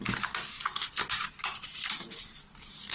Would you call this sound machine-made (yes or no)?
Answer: no